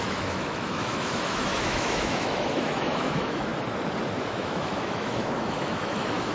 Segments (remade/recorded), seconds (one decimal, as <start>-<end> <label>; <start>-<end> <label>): 0.0-3.5 remade; 3.5-4.2 recorded; 4.2-6.3 remade